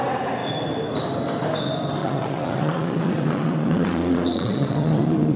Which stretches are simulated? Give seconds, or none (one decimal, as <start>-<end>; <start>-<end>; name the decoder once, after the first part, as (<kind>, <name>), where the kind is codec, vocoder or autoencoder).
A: 2.0-5.4 (vocoder, Vocos)

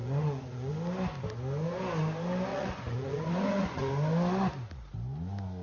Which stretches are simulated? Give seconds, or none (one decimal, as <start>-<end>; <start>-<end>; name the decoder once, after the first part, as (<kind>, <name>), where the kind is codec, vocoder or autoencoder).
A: 0.0-0.7 (vocoder, Vocos); 2.5-3.9

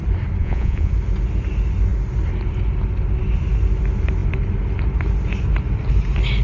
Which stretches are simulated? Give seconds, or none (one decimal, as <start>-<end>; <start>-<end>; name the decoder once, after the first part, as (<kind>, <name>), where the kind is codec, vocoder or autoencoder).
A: 0.4-0.9 (vocoder, Vocos)

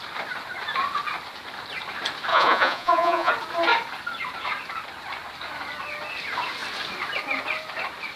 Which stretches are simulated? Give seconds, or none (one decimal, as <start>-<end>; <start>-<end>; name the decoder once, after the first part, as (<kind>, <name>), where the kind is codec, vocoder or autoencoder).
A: 2.3-3.3 (vocoder, Vocos)

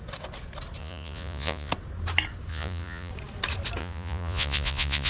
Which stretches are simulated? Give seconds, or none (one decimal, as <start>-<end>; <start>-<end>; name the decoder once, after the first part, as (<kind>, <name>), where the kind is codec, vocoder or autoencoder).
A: 0.8-1.7 (vocoder, Vocos); 2.5-3.1; 3.8-5.1